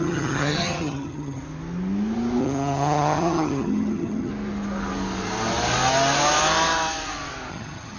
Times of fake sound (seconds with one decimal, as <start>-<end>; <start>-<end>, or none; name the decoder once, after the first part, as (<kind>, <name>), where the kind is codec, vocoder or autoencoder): 0.0-1.4 (vocoder, HiFi-GAN); 2.4-4.3; 7.5-8.0